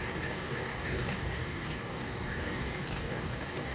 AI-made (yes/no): yes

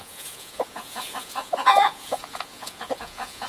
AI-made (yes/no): yes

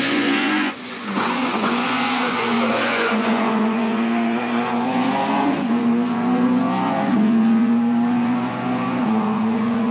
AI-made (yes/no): yes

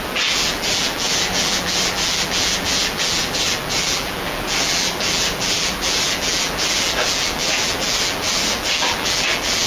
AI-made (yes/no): yes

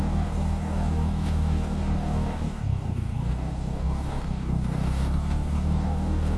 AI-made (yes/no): yes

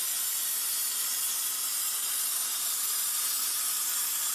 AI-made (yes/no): no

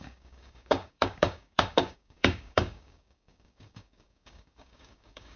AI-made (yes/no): yes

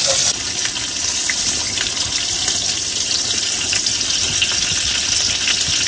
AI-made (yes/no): yes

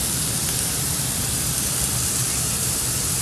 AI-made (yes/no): yes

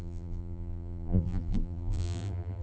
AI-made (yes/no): yes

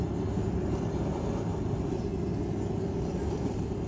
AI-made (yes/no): no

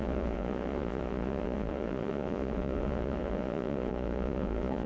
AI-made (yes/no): yes